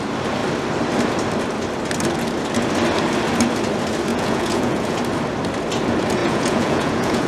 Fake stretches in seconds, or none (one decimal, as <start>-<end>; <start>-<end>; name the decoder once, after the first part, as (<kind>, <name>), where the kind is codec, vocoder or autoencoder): 4.1-5.0 (vocoder, Vocos); 6.2-7.3